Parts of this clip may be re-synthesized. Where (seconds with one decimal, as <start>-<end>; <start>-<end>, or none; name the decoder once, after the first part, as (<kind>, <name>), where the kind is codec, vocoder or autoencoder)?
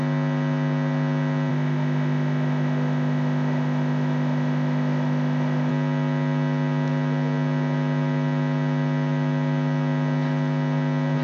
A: 1.5-5.7 (autoencoder, DAC-VAE)